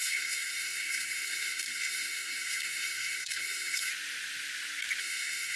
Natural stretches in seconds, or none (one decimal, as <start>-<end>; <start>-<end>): 3.9-5.0